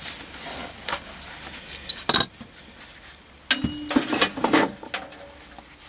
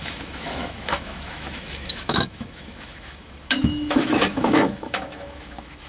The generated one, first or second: second